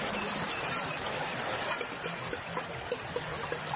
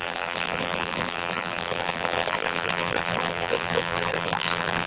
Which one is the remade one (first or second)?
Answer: second